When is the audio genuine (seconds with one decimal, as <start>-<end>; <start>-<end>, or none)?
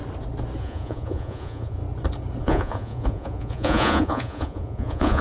0.0-0.6; 1.8-2.4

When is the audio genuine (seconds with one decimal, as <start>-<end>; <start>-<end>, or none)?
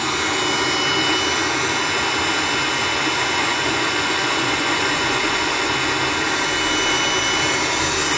0.0-3.4; 5.7-8.2